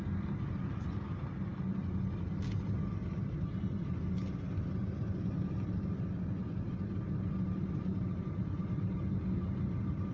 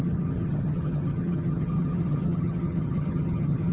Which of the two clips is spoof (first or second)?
second